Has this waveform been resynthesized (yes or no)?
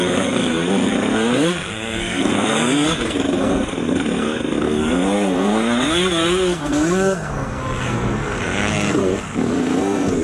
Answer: yes